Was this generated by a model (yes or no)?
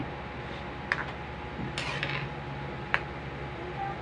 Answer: no